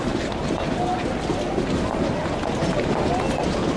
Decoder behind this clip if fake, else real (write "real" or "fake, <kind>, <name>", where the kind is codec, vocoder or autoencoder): real